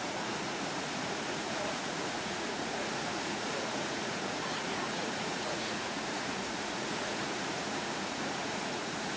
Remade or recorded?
remade